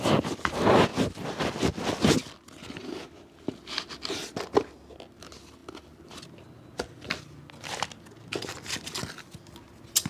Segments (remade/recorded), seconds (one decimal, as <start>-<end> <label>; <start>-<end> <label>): 0.0-10.1 recorded